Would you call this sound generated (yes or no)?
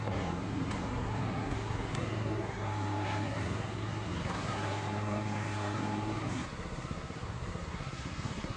yes